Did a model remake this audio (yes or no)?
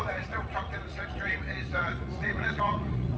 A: yes